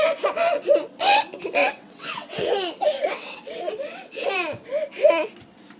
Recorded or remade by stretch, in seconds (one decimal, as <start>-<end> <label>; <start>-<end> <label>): 0.0-1.6 recorded; 1.6-4.3 remade; 4.3-5.8 recorded